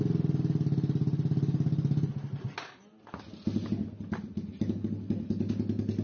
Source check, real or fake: real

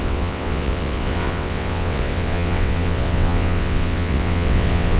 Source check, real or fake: fake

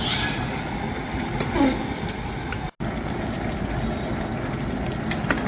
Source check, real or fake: real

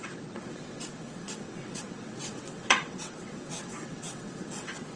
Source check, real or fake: fake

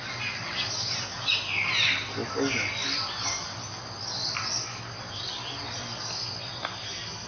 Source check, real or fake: real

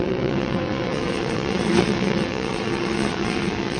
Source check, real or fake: fake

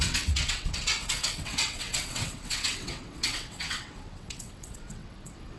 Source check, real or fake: fake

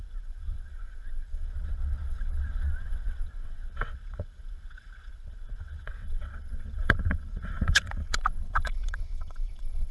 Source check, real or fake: fake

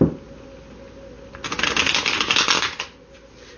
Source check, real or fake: real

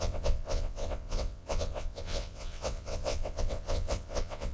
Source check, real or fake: fake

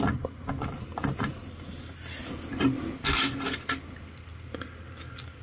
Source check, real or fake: real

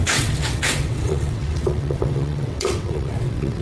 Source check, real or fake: fake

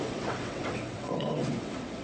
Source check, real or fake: fake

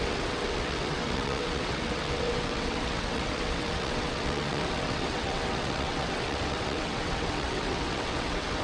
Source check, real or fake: fake